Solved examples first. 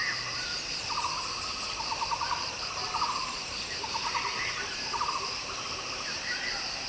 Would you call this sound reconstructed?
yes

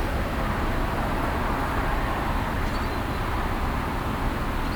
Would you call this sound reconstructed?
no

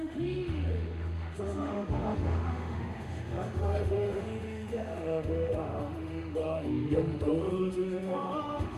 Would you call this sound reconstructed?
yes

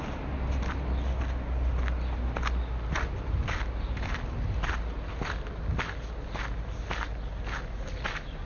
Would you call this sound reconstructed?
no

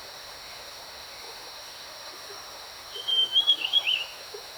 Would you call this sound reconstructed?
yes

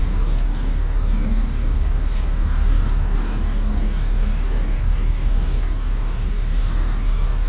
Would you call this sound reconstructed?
yes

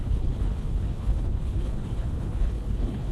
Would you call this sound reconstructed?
yes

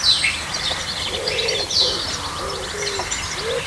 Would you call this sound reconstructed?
yes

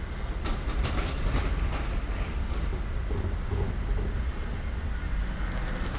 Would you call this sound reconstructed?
no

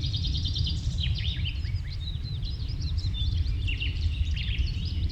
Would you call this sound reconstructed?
yes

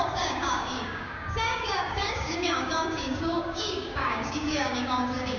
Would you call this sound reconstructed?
yes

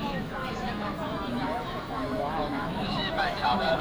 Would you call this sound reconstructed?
yes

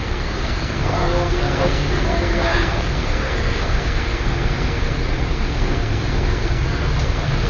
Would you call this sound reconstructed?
yes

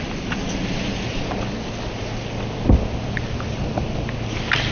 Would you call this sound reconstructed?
no